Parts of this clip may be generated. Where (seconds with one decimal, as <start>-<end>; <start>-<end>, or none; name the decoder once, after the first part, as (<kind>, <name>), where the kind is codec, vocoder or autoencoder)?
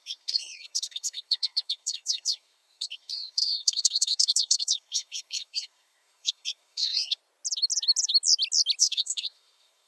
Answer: 0.0-7.2 (codec, SNAC); 8.8-9.9